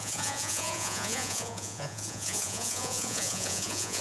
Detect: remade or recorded remade